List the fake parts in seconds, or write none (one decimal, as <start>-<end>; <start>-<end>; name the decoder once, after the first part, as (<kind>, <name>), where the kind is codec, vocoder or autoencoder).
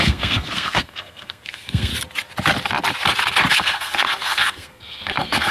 0.0-1.9 (codec, SNAC); 3.5-5.5